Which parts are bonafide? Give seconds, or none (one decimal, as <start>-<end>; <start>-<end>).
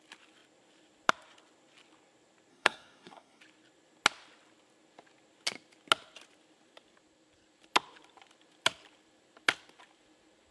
0.0-2.5; 3.4-10.5